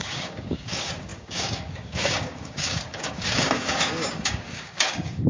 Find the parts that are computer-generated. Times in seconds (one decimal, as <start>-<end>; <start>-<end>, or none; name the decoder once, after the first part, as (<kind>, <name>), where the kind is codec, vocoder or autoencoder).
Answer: 0.0-5.3 (codec, DAC)

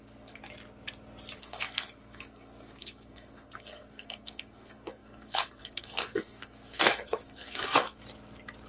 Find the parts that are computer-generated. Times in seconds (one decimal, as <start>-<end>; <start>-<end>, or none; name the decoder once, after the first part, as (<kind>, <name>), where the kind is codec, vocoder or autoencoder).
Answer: 0.0-0.4 (codec, SNAC); 1.4-8.0

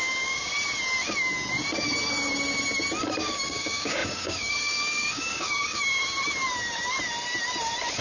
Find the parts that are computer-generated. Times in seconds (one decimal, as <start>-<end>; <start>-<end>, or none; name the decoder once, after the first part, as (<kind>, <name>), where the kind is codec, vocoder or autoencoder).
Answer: 0.0-0.5 (codec, DAC); 3.1-5.8